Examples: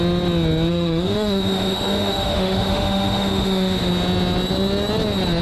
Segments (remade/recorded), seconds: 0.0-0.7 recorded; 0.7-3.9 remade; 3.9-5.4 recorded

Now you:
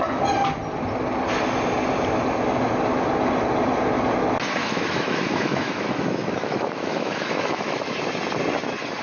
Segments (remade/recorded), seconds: 0.0-4.6 recorded; 4.6-7.9 remade; 7.9-9.0 recorded

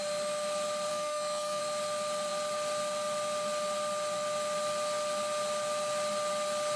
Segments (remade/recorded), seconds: 0.0-0.9 recorded; 0.9-1.6 remade; 1.6-6.8 recorded

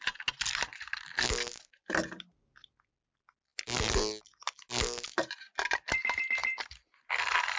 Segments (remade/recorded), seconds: 0.0-7.6 recorded

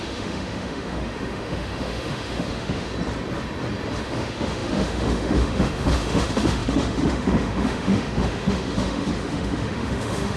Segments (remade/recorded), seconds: 0.0-2.9 remade; 2.9-4.0 recorded; 4.0-10.4 remade

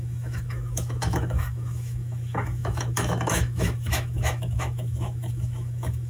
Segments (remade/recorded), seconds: 0.0-6.1 remade